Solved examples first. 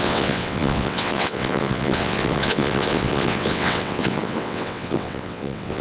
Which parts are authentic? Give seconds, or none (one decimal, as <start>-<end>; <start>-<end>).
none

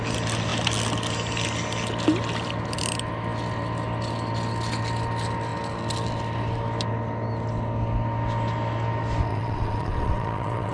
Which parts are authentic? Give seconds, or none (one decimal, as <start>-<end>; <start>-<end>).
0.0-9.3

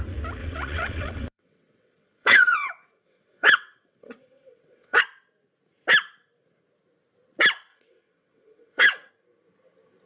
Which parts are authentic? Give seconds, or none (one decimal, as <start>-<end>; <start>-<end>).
0.0-0.4; 5.0-7.7; 9.1-10.1

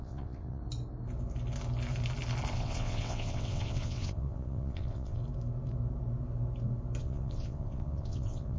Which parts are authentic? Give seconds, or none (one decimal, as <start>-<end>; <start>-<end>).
0.6-2.5; 5.2-7.0